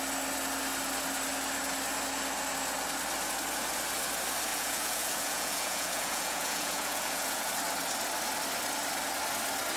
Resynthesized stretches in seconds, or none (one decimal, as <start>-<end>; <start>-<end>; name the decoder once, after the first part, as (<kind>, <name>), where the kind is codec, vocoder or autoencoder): 4.5-7.5 (vocoder, Vocos)